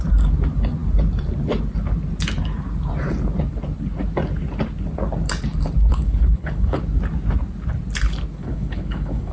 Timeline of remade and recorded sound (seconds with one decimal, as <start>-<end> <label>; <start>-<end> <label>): 0.0-5.9 recorded; 5.9-6.8 remade; 6.8-8.4 recorded; 8.4-9.3 remade